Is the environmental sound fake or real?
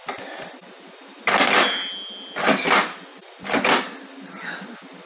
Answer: real